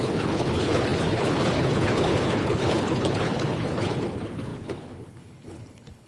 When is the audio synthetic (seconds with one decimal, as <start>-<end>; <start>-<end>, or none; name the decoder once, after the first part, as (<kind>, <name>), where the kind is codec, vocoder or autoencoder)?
0.0-6.1 (codec, HILCodec)